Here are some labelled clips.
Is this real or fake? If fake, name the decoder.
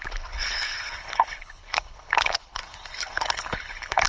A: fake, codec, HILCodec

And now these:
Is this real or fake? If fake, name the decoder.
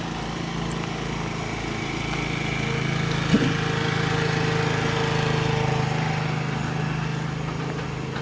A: real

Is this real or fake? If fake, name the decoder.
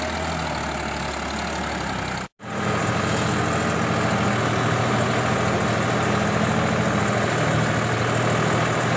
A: real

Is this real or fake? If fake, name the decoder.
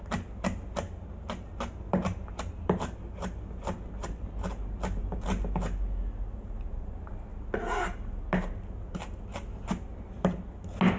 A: real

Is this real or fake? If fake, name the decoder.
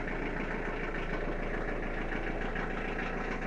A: real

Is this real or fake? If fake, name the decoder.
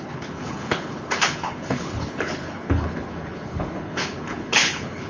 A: fake, codec, HILCodec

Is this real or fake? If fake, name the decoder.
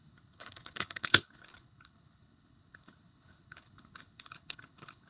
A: fake, codec, HILCodec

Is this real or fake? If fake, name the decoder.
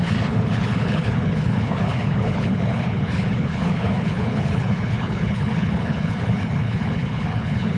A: fake, codec, HILCodec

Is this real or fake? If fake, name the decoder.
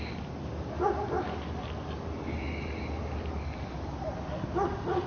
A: real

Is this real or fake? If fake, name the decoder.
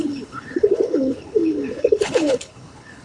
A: fake, codec, HILCodec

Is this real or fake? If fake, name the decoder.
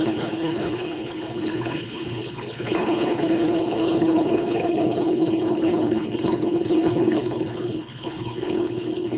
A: fake, codec, HILCodec